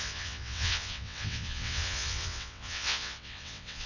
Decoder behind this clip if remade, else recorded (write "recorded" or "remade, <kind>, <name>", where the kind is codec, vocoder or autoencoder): remade, vocoder, WaveNeXt